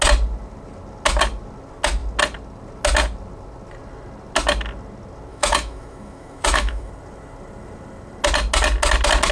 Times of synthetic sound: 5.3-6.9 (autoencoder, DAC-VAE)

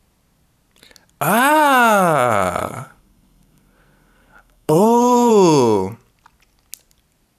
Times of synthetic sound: 2.6-5.3 (codec, SNAC)

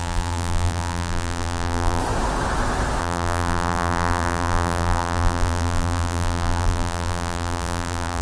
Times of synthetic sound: 0.0-2.0 (vocoder, BigVGAN v2); 3.0-8.2